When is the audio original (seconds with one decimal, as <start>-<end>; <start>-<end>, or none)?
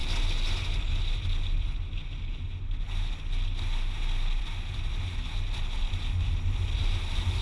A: 0.0-7.4